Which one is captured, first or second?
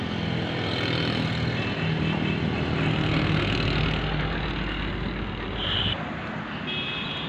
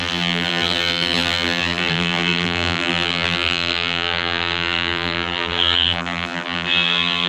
first